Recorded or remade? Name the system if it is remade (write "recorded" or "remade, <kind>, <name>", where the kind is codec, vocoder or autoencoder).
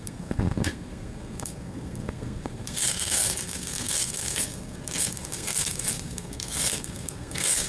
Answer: remade, codec, SNAC